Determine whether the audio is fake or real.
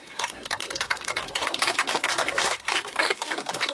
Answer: fake